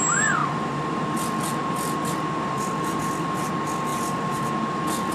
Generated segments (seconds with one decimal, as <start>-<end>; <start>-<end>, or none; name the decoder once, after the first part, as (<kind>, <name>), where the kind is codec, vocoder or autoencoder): 0.4-3.5 (vocoder, BigVGAN v2); 3.9-4.5